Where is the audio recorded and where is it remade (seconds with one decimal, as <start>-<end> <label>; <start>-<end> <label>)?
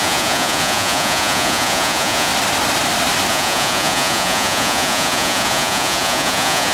0.0-2.3 remade; 2.3-3.3 recorded; 3.3-6.7 remade